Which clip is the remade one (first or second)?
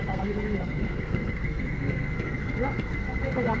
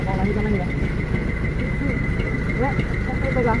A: first